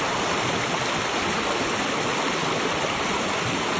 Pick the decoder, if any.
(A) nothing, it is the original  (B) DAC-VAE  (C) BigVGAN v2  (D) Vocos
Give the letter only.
A